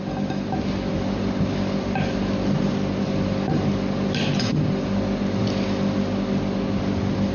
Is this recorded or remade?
recorded